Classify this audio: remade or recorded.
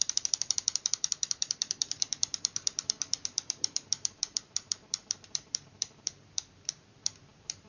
remade